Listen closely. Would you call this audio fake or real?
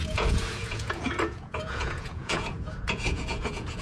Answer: fake